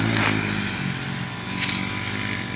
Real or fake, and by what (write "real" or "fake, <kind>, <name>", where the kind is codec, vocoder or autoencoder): real